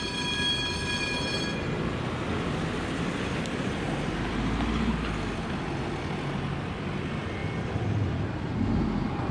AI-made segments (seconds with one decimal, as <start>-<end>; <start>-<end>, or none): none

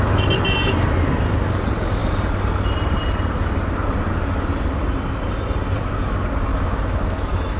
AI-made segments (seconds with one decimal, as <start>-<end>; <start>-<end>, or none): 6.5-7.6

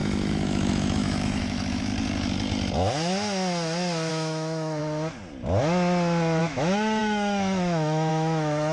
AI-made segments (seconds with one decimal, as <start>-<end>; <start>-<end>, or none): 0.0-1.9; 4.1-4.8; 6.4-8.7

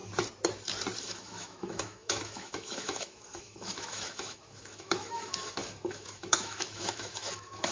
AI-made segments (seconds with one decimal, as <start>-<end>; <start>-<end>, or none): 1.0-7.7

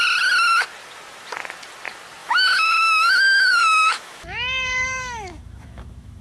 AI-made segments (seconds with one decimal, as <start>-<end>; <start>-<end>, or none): 2.2-6.2